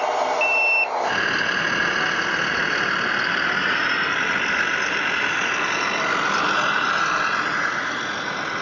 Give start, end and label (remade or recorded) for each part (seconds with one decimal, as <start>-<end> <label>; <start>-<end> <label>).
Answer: 0.0-3.6 recorded; 3.6-4.1 remade; 4.1-7.5 recorded; 7.5-8.0 remade; 8.0-8.6 recorded